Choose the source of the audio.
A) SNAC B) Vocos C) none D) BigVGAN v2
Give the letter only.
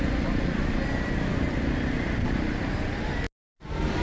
C